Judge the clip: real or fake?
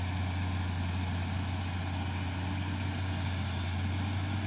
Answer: real